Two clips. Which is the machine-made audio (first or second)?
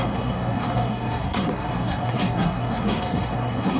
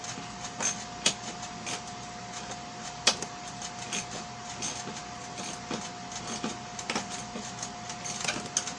first